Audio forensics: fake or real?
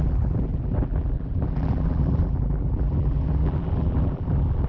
fake